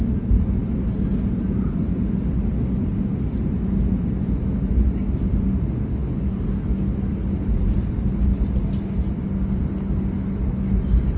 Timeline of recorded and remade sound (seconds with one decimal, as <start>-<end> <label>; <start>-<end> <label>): 0.0-1.9 recorded; 1.9-2.9 remade; 2.9-11.2 recorded